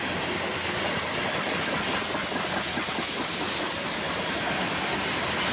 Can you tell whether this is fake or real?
real